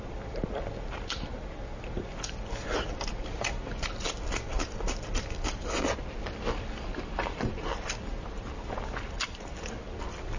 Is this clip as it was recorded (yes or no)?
yes